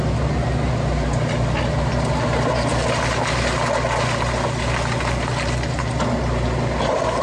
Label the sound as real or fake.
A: real